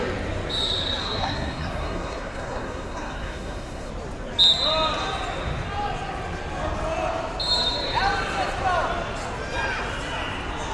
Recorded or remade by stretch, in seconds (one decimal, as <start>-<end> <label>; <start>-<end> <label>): 0.0-1.0 recorded; 1.0-3.9 remade; 3.9-10.7 recorded